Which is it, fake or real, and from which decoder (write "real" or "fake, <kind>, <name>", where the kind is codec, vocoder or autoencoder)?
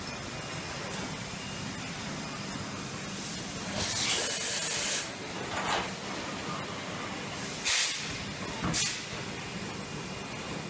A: real